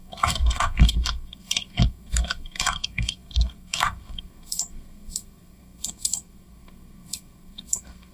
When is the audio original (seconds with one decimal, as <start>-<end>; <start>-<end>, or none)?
none